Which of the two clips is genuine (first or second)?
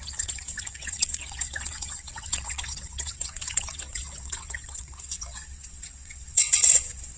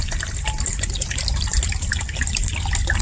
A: second